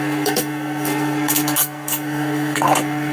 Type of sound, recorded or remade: remade